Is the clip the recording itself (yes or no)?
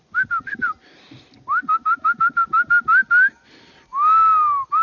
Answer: yes